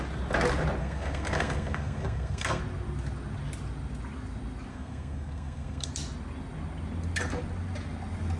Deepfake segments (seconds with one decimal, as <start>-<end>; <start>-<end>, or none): 0.8-2.6; 4.7-5.9